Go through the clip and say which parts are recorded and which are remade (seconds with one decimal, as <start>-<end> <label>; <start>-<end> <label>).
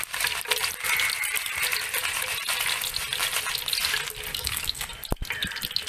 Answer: 0.0-4.3 recorded; 4.3-4.9 remade; 4.9-5.9 recorded